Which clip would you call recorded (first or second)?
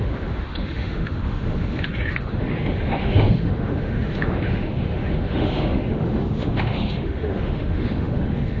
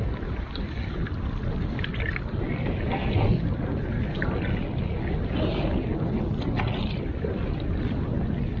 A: second